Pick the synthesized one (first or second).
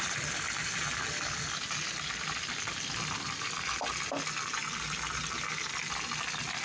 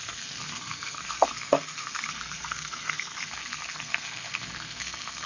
second